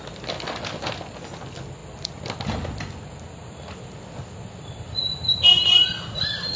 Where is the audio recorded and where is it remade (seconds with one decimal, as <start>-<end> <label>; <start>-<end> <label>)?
0.0-6.6 recorded

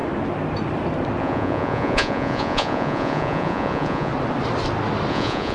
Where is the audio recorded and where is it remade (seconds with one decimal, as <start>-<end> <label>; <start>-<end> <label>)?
0.0-1.2 recorded; 1.2-4.1 remade; 4.1-5.1 recorded; 5.1-5.5 remade

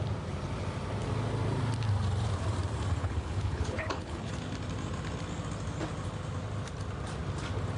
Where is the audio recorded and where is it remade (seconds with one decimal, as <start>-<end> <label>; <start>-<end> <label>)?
0.0-3.0 recorded; 3.0-4.3 remade; 4.3-7.8 recorded